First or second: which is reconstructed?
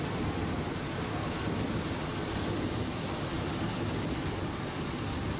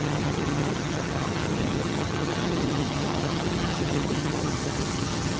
second